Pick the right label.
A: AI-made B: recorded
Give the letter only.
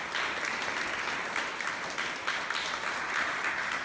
B